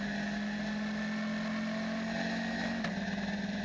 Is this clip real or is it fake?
real